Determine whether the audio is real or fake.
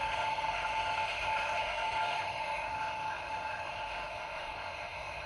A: fake